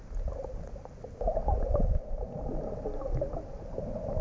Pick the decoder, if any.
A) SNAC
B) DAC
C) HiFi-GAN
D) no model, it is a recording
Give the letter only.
D